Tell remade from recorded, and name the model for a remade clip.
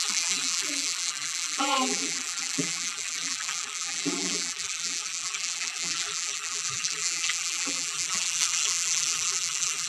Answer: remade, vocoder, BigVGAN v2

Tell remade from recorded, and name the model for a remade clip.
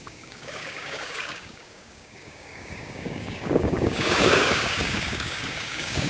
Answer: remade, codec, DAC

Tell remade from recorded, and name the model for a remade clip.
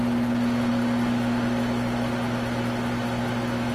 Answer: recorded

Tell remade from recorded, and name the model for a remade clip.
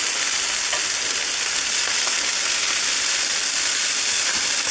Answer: recorded